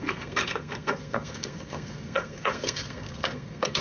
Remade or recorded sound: remade